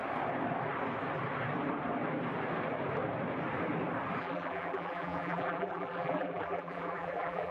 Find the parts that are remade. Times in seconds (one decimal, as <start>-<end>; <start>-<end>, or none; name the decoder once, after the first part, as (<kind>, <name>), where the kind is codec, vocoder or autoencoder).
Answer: 4.2-7.5 (vocoder, BigVGAN v2)